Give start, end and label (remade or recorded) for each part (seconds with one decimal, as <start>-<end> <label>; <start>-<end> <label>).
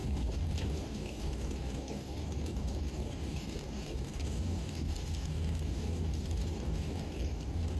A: 0.0-7.8 remade